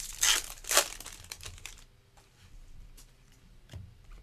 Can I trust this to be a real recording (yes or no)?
no